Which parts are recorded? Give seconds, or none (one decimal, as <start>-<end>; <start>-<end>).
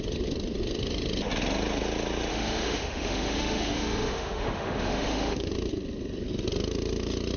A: 0.0-2.3; 5.5-7.4